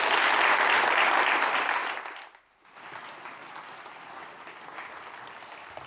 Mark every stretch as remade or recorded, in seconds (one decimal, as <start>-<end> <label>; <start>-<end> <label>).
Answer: 0.0-5.9 recorded